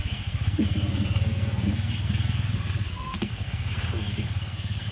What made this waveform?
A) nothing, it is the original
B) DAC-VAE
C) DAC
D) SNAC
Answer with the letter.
D